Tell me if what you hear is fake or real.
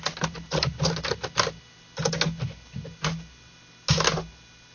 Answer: real